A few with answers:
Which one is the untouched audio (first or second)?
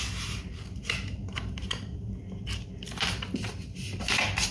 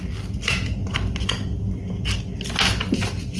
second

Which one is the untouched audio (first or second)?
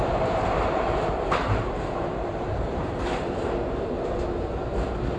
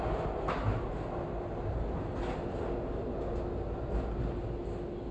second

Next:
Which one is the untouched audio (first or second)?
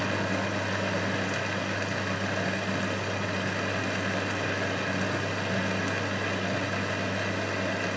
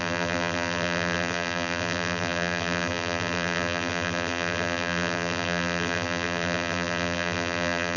first